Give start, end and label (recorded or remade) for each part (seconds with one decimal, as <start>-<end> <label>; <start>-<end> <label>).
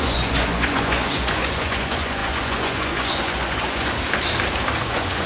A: 0.0-3.9 remade; 3.9-4.8 recorded; 4.8-5.3 remade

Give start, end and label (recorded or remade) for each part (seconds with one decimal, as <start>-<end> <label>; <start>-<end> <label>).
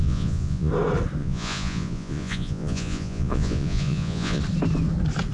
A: 0.0-0.7 remade; 0.7-1.2 recorded; 1.2-4.4 remade; 4.4-5.3 recorded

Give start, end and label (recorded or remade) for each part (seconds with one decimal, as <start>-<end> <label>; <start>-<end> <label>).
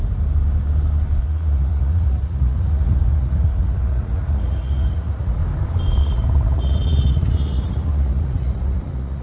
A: 0.0-1.2 recorded; 1.2-5.4 remade; 5.4-6.0 recorded; 6.0-9.2 remade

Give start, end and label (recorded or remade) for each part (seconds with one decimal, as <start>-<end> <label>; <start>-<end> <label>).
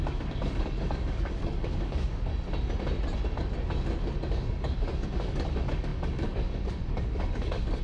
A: 0.0-2.3 remade; 2.3-4.3 recorded; 4.3-7.8 remade